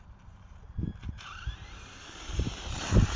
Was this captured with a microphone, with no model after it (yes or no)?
no